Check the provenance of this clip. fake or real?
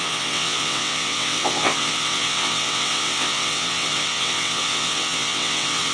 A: fake